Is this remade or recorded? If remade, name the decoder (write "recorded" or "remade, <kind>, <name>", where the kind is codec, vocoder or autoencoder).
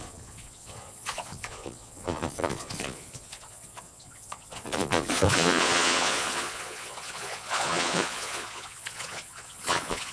remade, vocoder, Vocos